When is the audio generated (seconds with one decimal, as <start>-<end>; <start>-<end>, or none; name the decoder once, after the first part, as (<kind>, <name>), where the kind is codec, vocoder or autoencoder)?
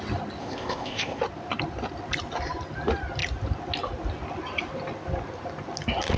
0.4-1.2 (codec, ZipCodec)